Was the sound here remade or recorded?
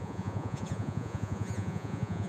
remade